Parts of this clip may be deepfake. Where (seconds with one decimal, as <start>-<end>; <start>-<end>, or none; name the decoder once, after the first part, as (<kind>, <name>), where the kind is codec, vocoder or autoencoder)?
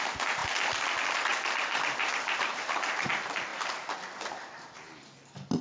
1.3-3.1 (vocoder, BigVGAN v2)